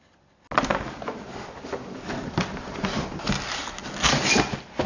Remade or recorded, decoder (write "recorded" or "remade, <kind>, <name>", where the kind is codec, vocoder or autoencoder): recorded